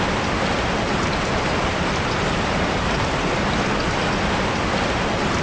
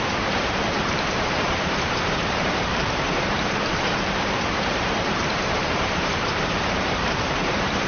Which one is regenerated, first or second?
second